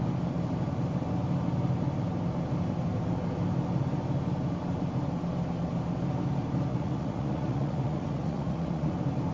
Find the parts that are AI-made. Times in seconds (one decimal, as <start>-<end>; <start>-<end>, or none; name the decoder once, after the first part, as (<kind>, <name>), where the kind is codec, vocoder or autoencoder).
6.7-8.9 (vocoder, Vocos)